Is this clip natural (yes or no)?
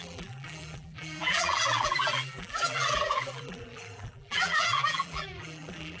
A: no